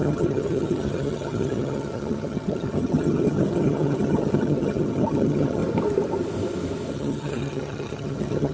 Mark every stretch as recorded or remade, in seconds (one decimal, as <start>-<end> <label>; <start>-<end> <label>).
0.0-5.6 remade; 5.6-6.9 recorded; 6.9-8.5 remade